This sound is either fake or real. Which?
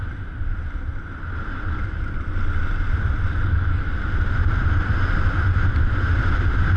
real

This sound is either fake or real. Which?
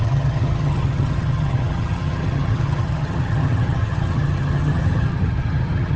fake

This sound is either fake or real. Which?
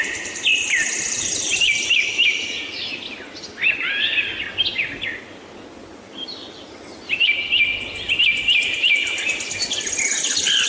real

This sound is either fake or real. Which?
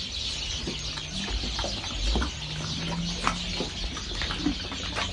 real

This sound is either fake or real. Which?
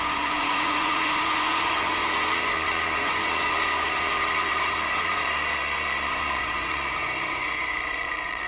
fake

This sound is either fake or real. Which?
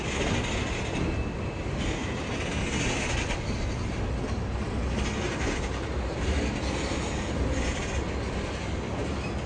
real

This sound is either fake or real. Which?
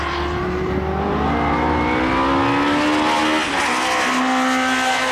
real